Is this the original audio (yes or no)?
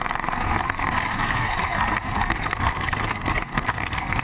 no